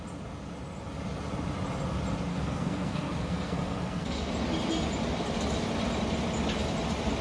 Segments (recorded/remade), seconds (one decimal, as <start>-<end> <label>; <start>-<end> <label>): 0.0-2.3 recorded; 2.3-4.3 remade; 4.3-7.2 recorded